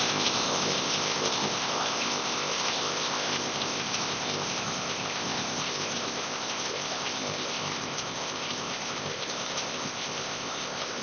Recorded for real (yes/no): no